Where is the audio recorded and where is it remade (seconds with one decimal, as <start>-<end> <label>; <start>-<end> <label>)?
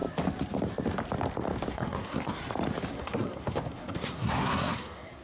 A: 0.0-1.7 recorded; 1.7-2.4 remade; 2.4-2.9 recorded; 2.9-5.2 remade